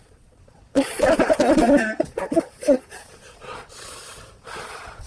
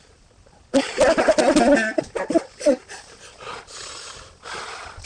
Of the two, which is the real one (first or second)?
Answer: second